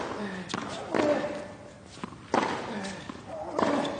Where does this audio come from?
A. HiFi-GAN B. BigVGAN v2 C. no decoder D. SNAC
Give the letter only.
C